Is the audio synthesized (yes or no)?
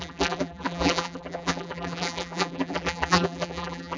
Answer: yes